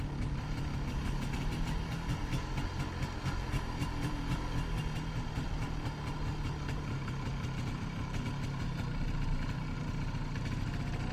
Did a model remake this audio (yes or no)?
no